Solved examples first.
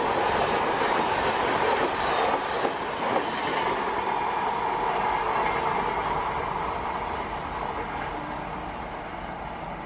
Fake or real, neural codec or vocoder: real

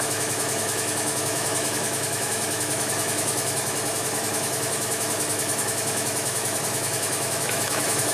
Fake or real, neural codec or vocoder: fake, autoencoder, DAC-VAE